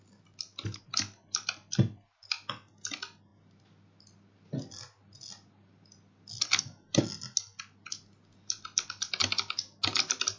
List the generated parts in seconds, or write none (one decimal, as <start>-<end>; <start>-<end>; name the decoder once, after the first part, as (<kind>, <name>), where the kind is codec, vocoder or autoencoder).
none